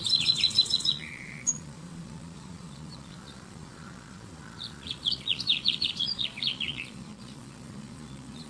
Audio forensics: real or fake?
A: fake